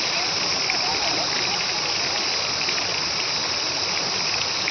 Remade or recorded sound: recorded